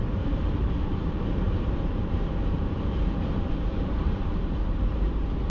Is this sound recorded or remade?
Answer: remade